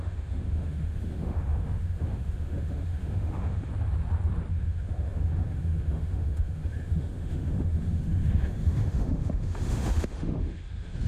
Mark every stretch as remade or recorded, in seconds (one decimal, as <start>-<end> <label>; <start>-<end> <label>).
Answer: 0.0-3.7 remade; 3.7-4.5 recorded; 4.5-11.1 remade